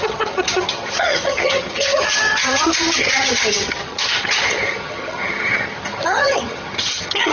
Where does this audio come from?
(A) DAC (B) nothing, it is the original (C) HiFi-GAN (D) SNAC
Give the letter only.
C